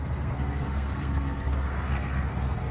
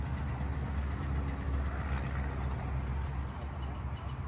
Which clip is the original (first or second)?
second